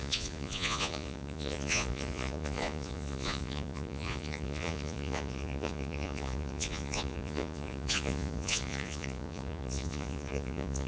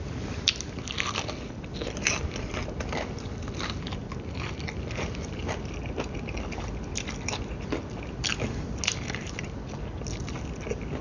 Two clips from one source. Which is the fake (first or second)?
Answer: first